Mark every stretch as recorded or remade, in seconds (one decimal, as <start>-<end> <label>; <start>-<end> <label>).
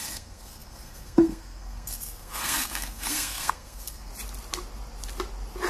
0.0-4.1 remade; 4.1-5.7 recorded